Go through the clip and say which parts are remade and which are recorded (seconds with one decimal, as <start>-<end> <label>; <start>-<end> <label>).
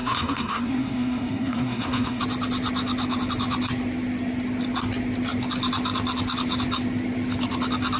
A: 0.0-2.2 remade; 2.2-8.0 recorded